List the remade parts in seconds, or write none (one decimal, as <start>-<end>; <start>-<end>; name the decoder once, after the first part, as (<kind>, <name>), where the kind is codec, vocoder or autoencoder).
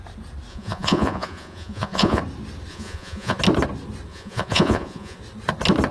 0.5-2.2 (vocoder, Vocos); 2.7-3.4; 4.1-5.2